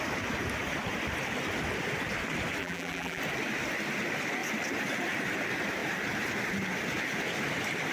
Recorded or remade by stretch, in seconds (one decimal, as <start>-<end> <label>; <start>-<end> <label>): 0.0-2.6 recorded; 2.6-3.2 remade; 3.2-7.9 recorded